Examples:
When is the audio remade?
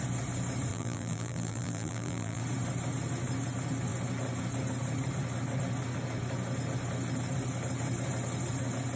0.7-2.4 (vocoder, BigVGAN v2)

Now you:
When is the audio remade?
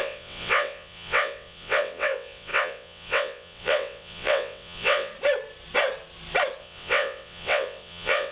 0.0-5.1 (vocoder, WaveNeXt); 6.6-8.3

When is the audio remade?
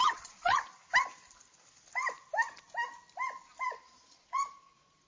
0.0-0.7 (vocoder, Vocos); 3.8-5.1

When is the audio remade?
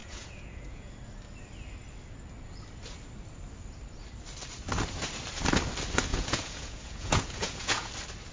0.0-0.9 (vocoder, Vocos); 6.1-7.9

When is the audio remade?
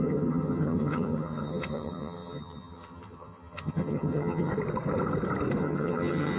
0.0-4.5 (vocoder, HiFi-GAN); 5.6-6.4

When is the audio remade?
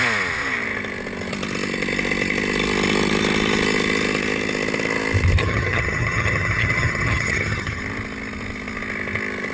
5.4-7.8 (vocoder, HiFi-GAN)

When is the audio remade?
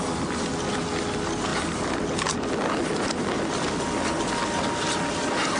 none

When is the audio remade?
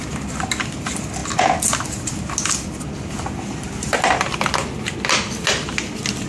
none